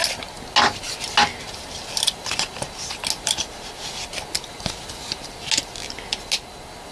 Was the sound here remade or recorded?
recorded